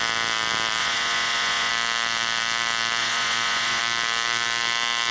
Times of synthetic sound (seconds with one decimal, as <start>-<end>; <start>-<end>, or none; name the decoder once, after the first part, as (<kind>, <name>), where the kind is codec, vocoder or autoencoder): 0.8-1.7 (vocoder, Vocos); 3.0-3.8